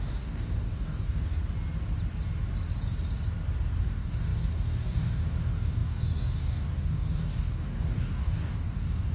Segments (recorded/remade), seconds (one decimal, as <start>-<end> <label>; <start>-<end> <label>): 0.0-1.4 remade; 1.4-3.8 recorded; 3.8-9.1 remade